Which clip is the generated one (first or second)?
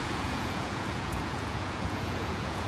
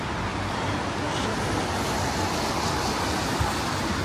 first